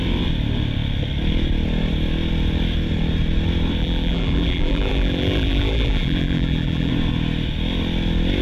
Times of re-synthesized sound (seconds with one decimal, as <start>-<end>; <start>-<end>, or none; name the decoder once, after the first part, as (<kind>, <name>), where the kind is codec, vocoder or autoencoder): 3.8-6.9 (vocoder, BigVGAN v2)